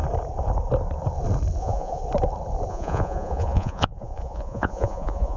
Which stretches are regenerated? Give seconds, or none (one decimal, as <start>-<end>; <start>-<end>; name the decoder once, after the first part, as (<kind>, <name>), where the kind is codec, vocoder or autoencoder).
1.6-2.0 (vocoder, Vocos); 2.7-5.4